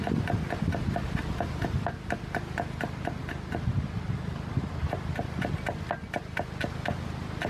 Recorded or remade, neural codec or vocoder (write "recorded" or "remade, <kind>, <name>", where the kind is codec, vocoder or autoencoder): recorded